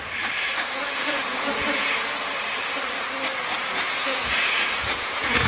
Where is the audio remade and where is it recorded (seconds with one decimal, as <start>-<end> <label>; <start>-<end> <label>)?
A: 0.0-0.8 recorded; 0.8-2.3 remade; 2.3-3.5 recorded; 3.5-5.5 remade